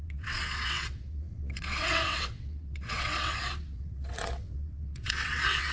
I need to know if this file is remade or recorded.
remade